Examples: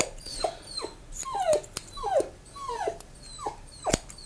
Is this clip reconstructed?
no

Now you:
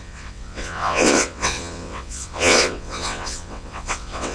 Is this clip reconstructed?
yes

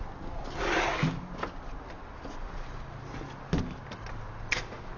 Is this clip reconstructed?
no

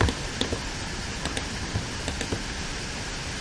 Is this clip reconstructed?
no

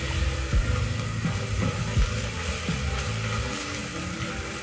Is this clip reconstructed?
no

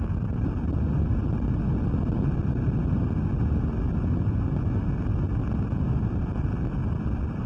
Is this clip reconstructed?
no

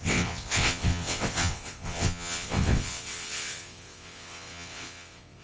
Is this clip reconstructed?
yes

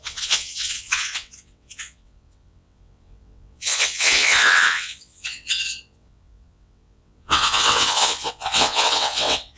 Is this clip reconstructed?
yes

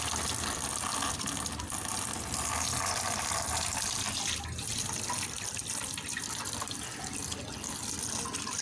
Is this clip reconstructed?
no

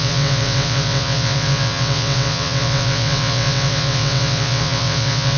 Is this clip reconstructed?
yes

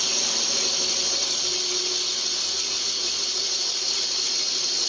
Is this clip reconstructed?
no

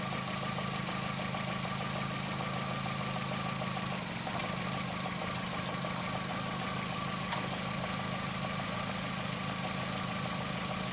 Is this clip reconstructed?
no